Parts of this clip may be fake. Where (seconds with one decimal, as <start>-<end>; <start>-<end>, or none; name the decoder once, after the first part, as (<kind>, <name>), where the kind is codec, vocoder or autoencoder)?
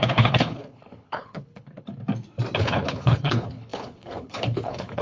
0.0-1.9 (codec, HILCodec); 2.6-5.0